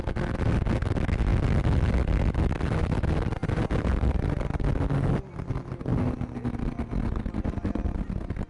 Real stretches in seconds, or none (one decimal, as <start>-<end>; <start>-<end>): 0.0-8.5